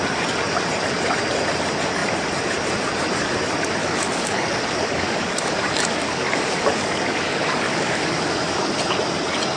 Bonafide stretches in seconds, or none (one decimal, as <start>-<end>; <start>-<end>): 0.0-3.8; 8.7-9.6